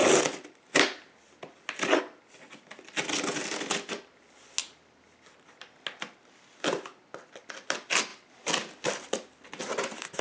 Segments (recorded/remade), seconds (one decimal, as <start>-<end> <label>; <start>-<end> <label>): 0.0-10.2 recorded